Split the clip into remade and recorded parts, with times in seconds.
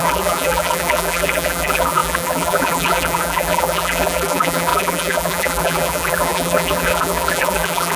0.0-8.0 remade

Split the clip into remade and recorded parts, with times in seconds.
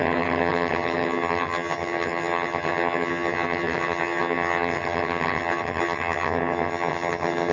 0.0-7.5 remade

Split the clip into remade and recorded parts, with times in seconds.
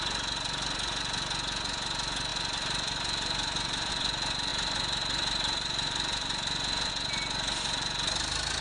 0.0-2.3 recorded; 2.3-3.9 remade; 3.9-4.5 recorded; 4.5-6.9 remade; 6.9-8.6 recorded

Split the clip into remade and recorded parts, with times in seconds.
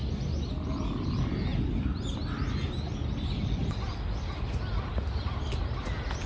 0.0-6.3 recorded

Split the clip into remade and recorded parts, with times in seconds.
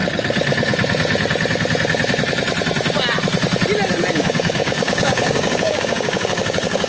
0.0-4.1 recorded; 4.1-6.9 remade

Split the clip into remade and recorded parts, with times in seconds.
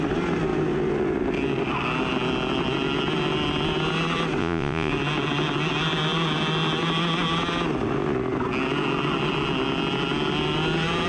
0.0-4.4 recorded; 4.4-4.9 remade; 4.9-11.1 recorded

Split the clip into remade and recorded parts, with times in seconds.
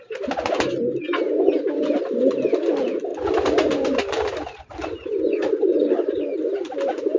0.0-3.1 recorded; 3.1-4.6 remade; 4.6-5.1 recorded; 5.1-7.2 remade